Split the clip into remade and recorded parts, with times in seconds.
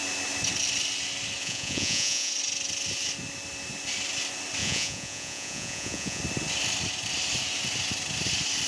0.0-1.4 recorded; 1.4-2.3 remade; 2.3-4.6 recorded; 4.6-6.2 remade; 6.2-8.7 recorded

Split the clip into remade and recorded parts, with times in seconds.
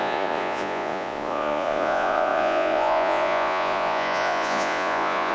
0.0-5.3 remade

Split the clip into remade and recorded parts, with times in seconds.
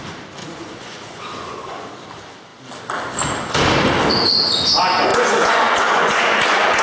0.0-0.4 recorded; 0.4-1.9 remade; 1.9-5.1 recorded; 5.1-6.8 remade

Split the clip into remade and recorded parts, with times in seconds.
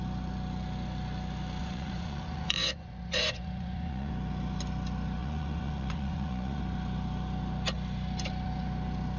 0.0-1.6 recorded; 1.6-4.1 remade; 4.1-5.2 recorded; 5.2-6.6 remade; 6.6-9.2 recorded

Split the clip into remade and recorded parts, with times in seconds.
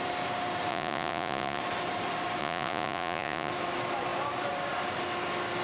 0.0-0.7 recorded; 0.7-1.6 remade; 1.6-2.4 recorded; 2.4-3.5 remade; 3.5-5.6 recorded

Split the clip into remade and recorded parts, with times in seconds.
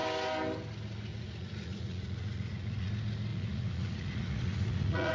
0.0-1.1 recorded; 1.1-2.9 remade; 2.9-3.3 recorded; 3.3-5.1 remade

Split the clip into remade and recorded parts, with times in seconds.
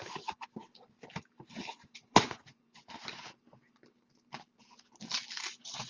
0.0-1.7 recorded; 1.7-2.8 remade; 2.8-5.9 recorded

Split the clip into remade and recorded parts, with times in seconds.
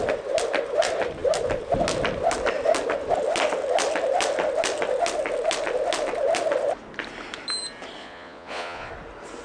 0.0-8.0 recorded; 8.0-8.9 remade; 8.9-9.4 recorded